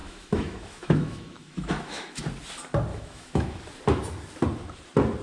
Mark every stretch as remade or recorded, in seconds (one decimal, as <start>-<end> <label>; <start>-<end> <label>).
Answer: 0.0-2.2 remade; 2.2-2.9 recorded; 2.9-3.6 remade; 3.6-5.2 recorded